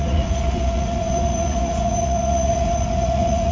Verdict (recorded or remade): remade